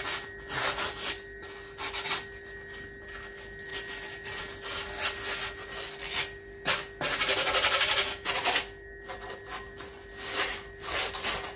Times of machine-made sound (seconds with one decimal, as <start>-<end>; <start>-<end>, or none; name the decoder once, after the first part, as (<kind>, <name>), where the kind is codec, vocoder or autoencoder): none